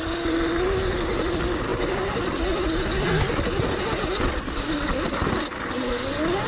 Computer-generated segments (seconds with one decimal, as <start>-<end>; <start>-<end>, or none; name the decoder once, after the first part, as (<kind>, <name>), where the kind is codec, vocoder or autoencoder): none